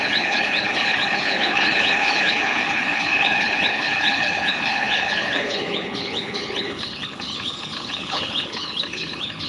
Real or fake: fake